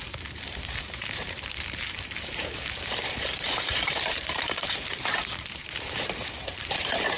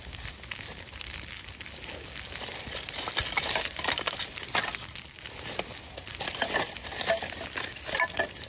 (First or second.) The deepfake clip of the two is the first